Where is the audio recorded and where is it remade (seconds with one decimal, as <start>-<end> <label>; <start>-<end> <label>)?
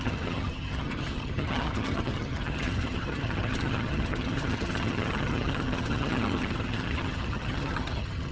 0.0-8.3 remade